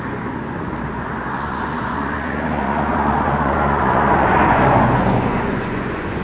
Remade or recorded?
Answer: remade